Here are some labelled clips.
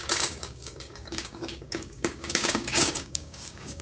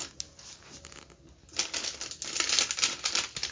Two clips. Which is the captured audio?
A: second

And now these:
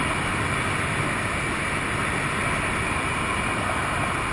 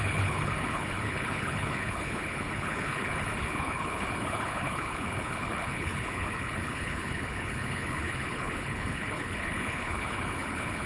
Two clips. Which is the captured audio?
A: first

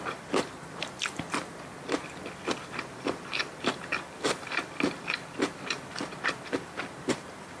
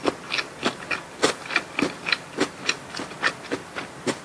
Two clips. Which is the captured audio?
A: second